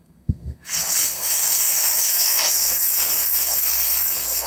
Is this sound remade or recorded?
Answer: remade